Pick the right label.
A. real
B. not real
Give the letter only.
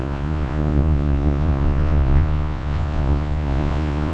B